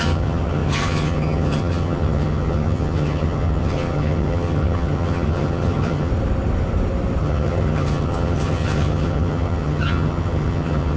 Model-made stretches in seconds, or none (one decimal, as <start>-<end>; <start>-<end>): 0.0-6.1; 7.2-11.0